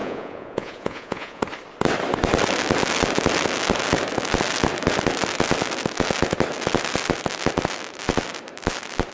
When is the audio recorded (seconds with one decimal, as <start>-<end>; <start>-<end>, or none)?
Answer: 1.4-9.1